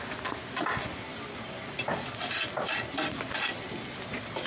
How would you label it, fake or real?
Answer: real